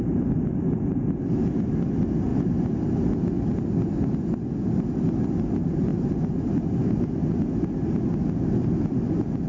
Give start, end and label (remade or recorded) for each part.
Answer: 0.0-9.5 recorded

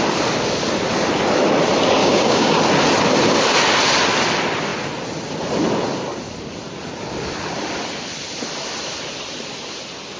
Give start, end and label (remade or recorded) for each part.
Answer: 0.0-2.0 recorded; 2.0-2.6 remade; 2.6-10.2 recorded

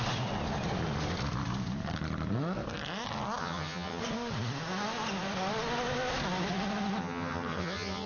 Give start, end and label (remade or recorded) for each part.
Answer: 0.0-3.4 recorded; 3.4-4.0 remade; 4.0-7.0 recorded; 7.0-8.1 remade